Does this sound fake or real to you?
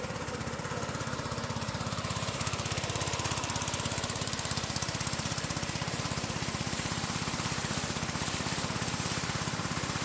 fake